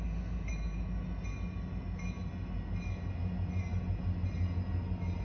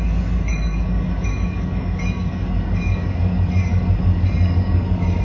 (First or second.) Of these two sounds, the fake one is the second